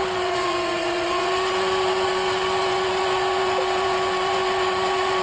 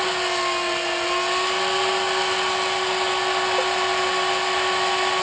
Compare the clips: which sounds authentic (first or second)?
second